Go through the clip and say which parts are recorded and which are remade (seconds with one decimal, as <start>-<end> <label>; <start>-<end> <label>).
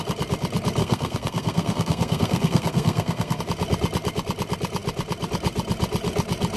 0.0-0.8 recorded; 0.8-3.4 remade; 3.4-6.6 recorded